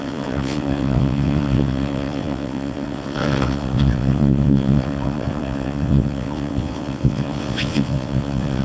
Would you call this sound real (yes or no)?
no